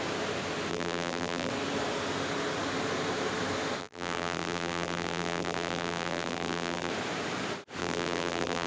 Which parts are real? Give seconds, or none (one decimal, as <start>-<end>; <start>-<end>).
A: 0.0-0.7; 1.5-3.8; 6.9-7.8